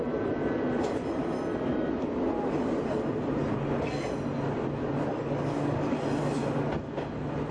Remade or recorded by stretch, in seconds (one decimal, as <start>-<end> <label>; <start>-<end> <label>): 0.0-5.1 recorded; 5.1-5.9 remade; 5.9-7.5 recorded